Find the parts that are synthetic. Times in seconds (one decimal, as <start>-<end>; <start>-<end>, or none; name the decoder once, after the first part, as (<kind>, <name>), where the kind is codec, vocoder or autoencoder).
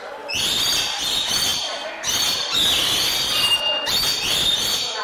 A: none